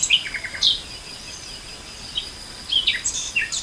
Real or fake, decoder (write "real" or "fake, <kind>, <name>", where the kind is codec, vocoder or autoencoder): real